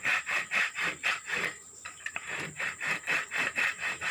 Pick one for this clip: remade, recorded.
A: remade